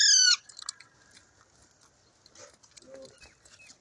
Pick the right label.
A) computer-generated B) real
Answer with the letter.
B